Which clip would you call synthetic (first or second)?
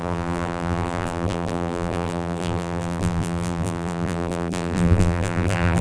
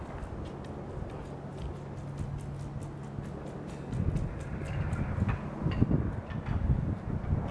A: first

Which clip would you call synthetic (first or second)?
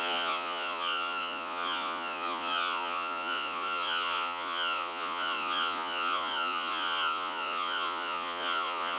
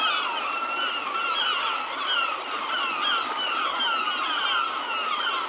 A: first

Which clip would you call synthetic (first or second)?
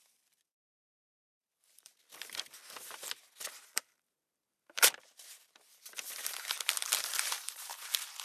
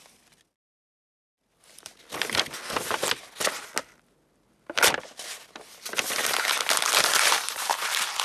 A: first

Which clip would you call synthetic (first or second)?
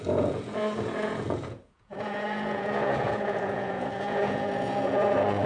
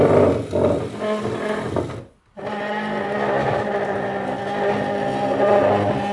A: first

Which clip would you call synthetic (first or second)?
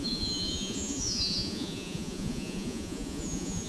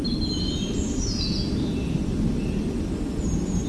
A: first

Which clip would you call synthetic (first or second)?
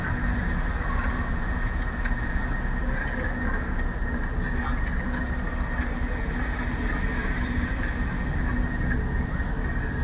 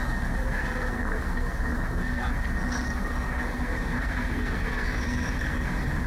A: second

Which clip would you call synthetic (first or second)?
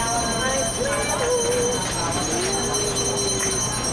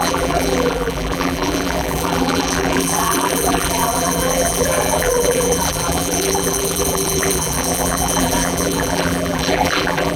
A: second